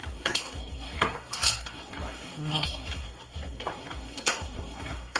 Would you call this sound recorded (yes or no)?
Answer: no